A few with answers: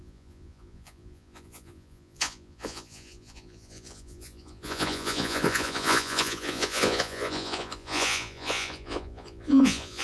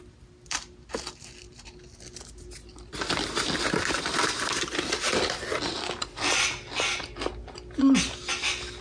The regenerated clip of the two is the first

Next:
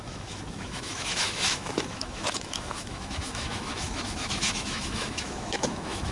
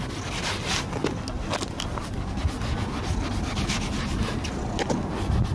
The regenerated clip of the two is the first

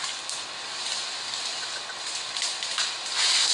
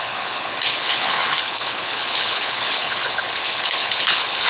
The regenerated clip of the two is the second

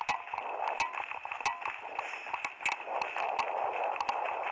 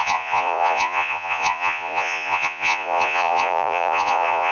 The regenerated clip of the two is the second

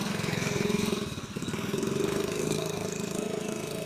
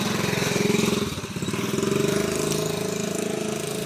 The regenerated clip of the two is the first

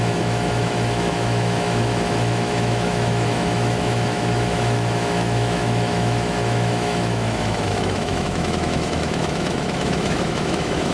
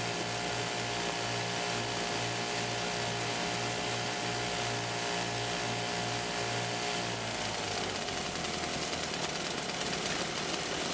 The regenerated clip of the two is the first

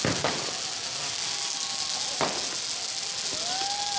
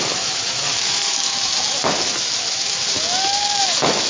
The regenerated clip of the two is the second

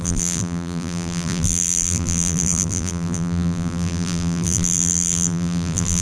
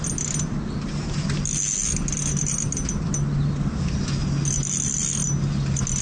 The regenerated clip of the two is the first